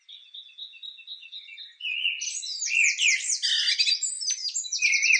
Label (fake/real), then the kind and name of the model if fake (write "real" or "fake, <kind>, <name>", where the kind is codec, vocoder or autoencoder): real